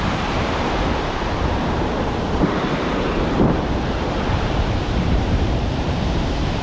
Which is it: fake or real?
fake